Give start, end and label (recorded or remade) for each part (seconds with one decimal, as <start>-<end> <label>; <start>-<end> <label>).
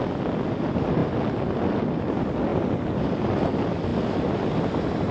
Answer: 0.0-5.1 recorded